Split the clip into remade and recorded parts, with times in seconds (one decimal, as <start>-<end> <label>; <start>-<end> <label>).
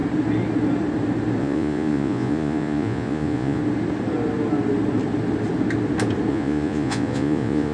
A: 0.0-1.4 recorded; 1.4-3.6 remade; 3.6-6.3 recorded; 6.3-7.7 remade